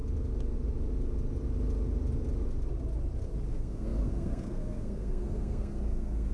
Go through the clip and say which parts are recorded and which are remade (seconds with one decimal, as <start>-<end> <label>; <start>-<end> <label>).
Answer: 0.0-3.5 recorded; 3.5-6.3 remade